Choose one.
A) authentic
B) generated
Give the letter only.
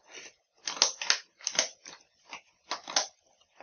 A